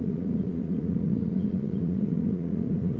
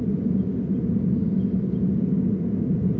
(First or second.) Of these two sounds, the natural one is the second